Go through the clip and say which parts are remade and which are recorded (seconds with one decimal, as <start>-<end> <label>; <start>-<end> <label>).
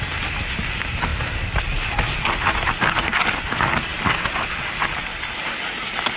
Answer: 0.0-6.2 recorded